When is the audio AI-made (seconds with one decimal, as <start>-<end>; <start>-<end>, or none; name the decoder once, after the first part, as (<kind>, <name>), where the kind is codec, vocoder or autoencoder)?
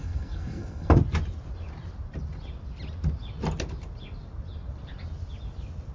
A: 0.0-0.9 (codec, SNAC)